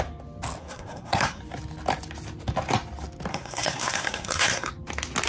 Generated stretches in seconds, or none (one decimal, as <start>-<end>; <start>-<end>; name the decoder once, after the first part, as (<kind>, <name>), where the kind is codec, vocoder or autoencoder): 0.6-1.4 (codec, SNAC); 3.3-4.7